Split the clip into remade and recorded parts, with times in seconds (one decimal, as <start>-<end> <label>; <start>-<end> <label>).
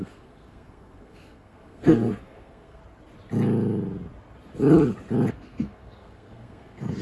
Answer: 0.0-2.8 remade; 2.8-5.3 recorded; 5.3-7.0 remade